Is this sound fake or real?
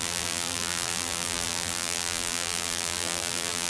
fake